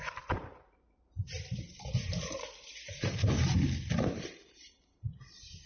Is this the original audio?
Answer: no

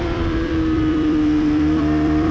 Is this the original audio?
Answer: no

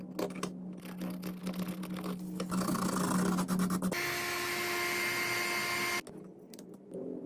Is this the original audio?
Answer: yes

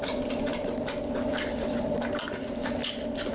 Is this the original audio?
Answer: yes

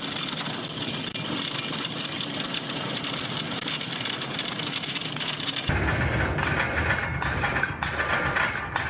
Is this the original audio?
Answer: yes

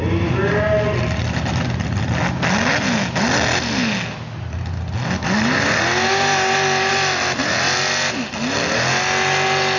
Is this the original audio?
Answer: yes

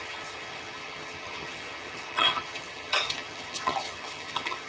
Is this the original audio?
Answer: no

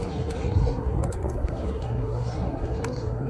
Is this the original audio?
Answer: no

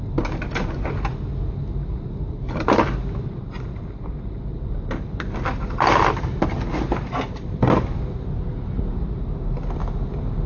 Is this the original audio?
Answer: yes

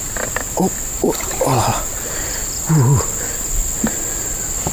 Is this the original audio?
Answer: yes